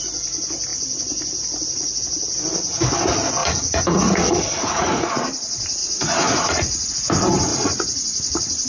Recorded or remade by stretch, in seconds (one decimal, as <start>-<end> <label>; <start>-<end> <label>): 0.0-3.4 recorded; 3.4-5.1 remade; 5.1-5.8 recorded; 5.8-6.9 remade; 6.9-7.5 recorded; 7.5-8.7 remade